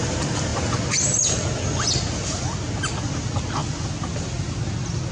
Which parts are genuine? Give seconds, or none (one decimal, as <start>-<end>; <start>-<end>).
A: 0.0-5.1